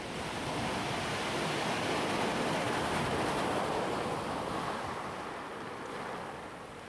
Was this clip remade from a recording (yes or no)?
no